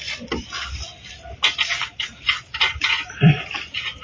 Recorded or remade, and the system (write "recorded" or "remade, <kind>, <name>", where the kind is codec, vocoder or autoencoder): recorded